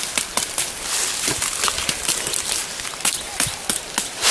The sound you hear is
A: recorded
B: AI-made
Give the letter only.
A